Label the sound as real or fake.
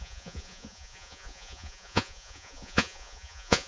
fake